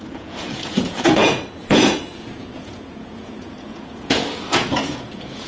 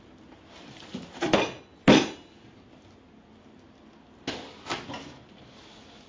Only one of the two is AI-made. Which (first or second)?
first